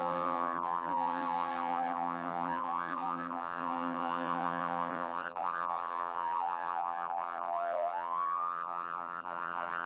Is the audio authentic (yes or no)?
no